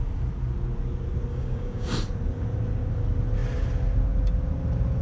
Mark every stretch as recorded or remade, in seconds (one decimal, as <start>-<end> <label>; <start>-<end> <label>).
0.0-1.3 recorded; 1.3-1.9 remade; 1.9-5.0 recorded